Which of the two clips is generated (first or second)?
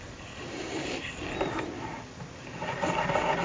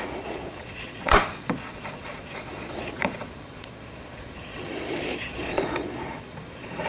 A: second